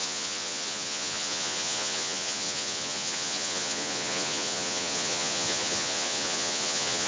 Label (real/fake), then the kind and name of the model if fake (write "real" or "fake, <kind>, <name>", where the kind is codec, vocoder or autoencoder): fake, vocoder, Vocos